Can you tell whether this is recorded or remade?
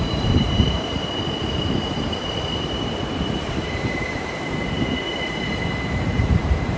remade